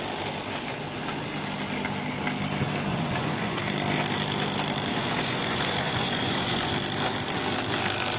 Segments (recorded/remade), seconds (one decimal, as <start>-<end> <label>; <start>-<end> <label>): 0.0-2.9 recorded; 2.9-3.6 remade; 3.6-4.9 recorded; 4.9-6.7 remade; 6.7-8.2 recorded